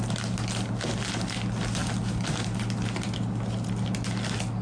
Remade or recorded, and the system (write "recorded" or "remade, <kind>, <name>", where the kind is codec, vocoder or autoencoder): recorded